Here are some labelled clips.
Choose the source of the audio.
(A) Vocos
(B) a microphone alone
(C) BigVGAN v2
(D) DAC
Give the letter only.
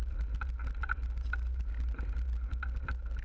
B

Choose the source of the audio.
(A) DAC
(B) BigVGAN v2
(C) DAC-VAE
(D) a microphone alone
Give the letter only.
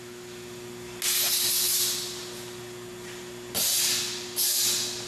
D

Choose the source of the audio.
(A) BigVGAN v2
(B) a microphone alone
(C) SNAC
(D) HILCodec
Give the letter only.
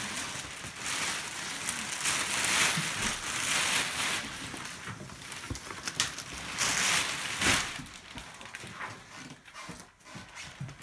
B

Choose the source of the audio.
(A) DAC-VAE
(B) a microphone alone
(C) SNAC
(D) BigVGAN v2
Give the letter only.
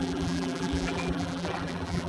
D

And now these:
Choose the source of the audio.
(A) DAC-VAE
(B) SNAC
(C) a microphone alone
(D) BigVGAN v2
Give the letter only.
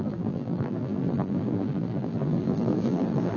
D